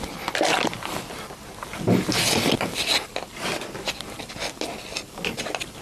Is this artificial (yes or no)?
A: no